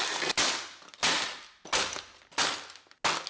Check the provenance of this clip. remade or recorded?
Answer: recorded